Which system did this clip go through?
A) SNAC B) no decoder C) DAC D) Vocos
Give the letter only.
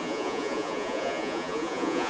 D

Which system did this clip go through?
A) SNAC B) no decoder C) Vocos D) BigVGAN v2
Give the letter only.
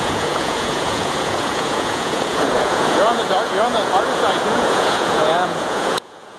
C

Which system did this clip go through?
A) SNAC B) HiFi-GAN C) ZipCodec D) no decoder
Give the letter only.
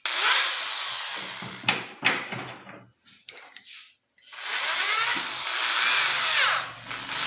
D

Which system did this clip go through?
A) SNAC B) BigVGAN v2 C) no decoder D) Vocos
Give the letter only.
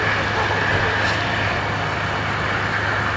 C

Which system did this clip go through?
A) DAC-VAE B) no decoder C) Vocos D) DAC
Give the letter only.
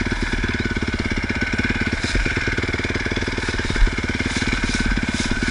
B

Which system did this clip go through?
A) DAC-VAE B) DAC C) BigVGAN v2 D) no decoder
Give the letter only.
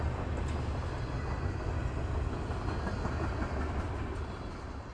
D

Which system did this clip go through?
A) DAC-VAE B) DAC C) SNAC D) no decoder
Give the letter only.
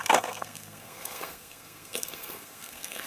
C